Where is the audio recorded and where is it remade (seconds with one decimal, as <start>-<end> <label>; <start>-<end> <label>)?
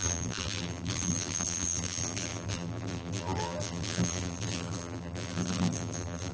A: 0.0-6.3 remade